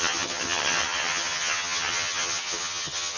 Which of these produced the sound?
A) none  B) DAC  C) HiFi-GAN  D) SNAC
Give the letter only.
C